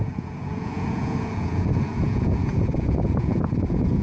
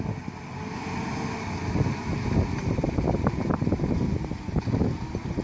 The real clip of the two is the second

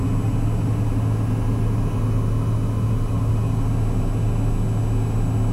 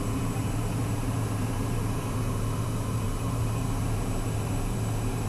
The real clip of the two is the first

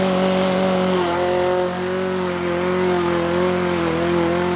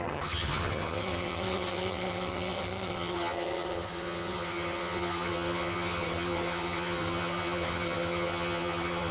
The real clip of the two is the first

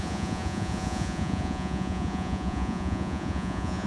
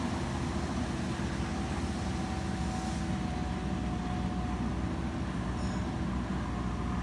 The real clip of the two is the second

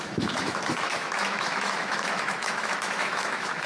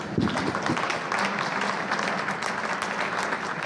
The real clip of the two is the second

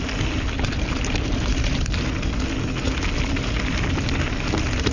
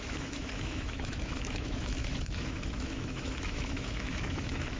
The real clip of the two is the first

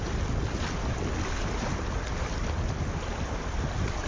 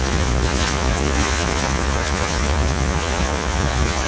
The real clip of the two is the first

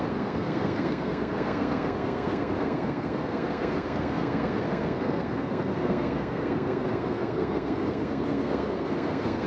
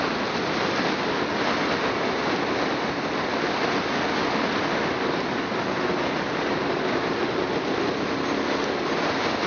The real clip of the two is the second